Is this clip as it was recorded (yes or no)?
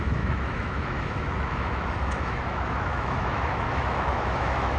no